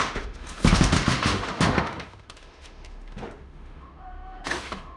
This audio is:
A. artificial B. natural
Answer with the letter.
A